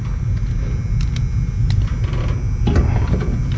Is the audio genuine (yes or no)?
yes